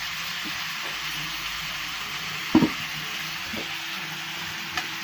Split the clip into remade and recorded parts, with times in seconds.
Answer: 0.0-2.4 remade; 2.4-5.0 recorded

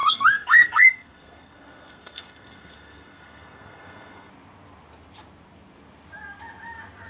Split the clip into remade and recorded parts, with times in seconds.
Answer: 0.0-4.3 remade; 4.3-7.1 recorded

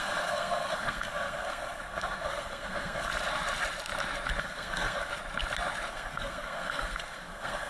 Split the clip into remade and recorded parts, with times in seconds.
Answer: 0.0-3.1 remade; 3.1-4.4 recorded; 4.4-5.1 remade; 5.1-5.9 recorded; 5.9-7.7 remade

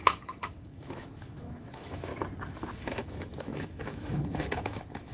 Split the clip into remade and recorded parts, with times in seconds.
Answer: 0.0-2.1 remade; 2.1-2.7 recorded; 2.7-5.1 remade